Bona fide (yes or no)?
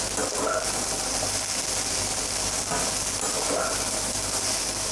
yes